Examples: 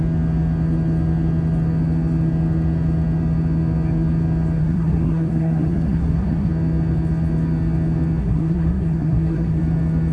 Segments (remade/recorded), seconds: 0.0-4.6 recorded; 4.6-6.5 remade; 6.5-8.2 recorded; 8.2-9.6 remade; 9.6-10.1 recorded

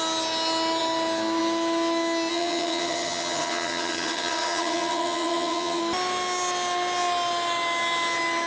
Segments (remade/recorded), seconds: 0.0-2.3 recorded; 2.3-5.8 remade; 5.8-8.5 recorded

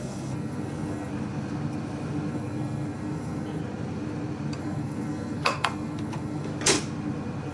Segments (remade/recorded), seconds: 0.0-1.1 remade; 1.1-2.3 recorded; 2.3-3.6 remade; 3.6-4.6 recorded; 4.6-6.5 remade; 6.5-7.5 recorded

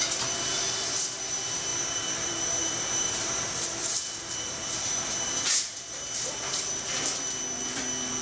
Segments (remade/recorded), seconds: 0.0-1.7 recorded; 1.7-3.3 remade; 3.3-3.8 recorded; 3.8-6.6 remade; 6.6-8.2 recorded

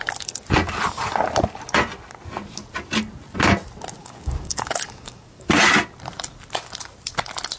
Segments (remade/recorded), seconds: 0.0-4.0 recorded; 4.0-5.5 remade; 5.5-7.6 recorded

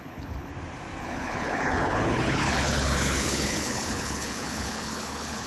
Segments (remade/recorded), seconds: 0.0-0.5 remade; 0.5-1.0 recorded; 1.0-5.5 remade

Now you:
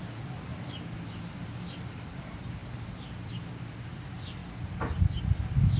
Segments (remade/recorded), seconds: 0.0-5.8 recorded